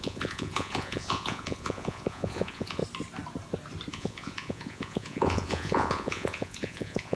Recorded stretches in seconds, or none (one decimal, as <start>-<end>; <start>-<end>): 2.8-3.9